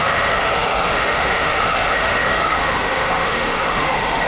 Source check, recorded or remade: remade